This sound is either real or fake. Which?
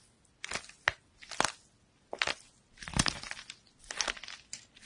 real